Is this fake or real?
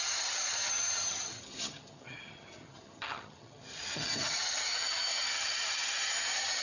fake